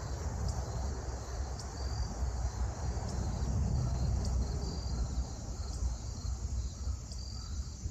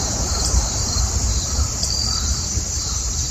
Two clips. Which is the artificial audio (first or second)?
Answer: second